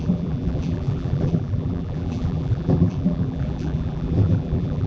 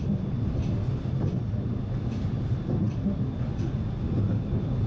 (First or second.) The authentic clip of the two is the second